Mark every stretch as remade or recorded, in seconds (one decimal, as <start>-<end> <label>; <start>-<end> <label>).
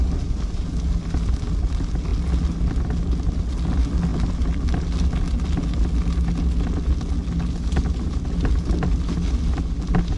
0.0-10.2 recorded